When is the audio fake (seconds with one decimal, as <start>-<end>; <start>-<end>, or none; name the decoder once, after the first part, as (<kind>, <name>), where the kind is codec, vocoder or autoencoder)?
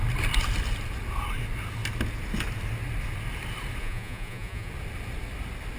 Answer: 3.8-4.7 (vocoder, Vocos)